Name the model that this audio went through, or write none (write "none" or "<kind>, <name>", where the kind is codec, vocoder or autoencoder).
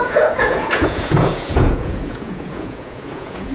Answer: vocoder, Vocos